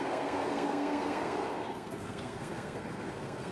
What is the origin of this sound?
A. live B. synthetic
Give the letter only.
B